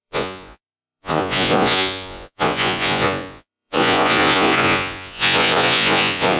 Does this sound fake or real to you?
fake